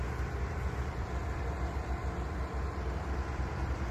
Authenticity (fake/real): fake